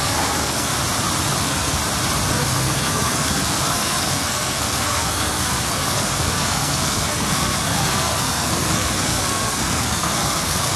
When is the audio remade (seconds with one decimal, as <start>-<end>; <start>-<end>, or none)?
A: 0.0-0.7; 1.4-1.8; 2.3-10.8